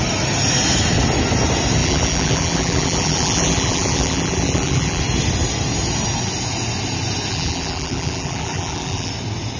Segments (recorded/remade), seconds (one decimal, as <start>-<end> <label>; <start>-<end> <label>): 0.0-1.8 recorded; 1.8-5.0 remade; 5.0-7.3 recorded; 7.3-9.1 remade; 9.1-9.6 recorded